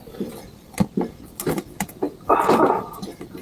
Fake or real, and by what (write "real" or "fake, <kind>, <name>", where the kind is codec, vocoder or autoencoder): real